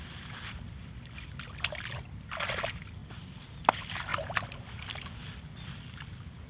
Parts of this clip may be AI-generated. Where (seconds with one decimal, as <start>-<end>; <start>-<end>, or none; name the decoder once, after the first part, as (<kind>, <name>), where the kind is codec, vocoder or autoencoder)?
none